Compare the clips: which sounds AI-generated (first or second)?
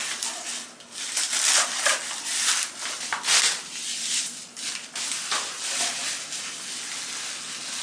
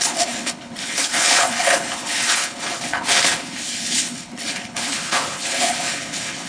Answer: second